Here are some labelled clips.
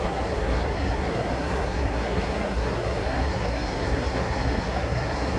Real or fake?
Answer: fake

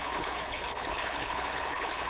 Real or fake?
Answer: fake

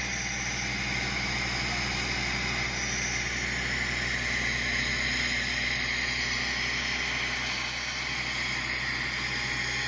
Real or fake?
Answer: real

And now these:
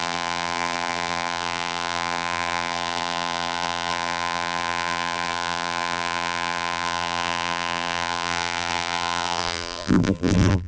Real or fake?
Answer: fake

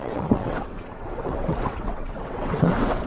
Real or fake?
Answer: fake